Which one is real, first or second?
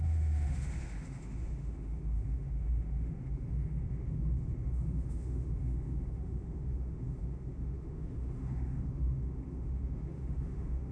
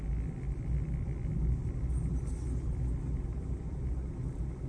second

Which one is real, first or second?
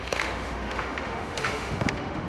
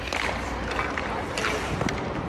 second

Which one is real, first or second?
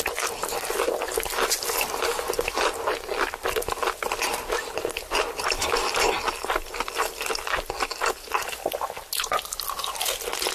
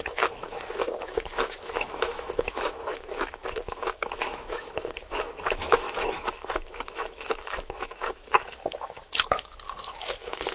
first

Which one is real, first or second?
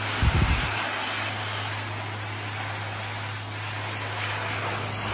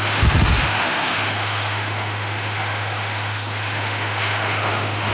first